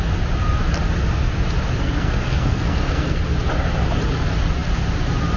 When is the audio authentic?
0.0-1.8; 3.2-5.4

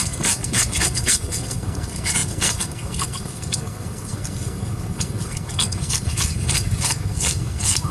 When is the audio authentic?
none

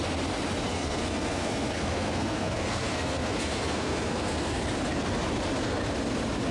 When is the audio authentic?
0.0-0.7; 4.6-6.5

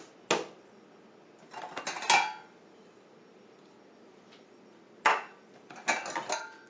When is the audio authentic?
0.0-6.7

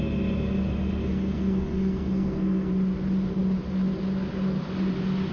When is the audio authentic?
0.0-1.1; 2.7-5.3